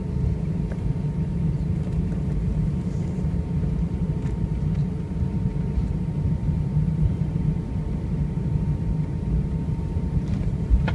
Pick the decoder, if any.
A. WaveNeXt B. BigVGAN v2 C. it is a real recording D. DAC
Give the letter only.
B